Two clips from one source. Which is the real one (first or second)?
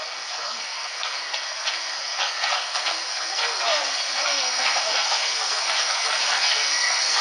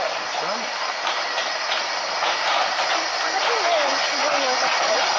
second